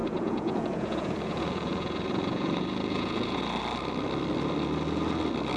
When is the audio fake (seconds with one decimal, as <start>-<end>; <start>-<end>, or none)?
0.0-3.4